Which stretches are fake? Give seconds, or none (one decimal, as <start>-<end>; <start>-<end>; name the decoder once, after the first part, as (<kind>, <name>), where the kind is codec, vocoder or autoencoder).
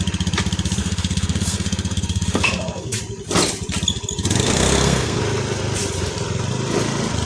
0.8-3.0 (codec, SNAC); 4.4-5.2